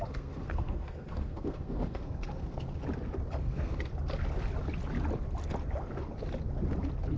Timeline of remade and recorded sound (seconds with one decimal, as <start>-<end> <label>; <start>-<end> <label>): 0.0-2.8 remade; 2.8-3.4 recorded; 3.4-3.9 remade; 3.9-7.2 recorded